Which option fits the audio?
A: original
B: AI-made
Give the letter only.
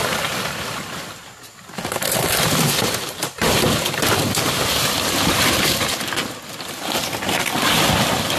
A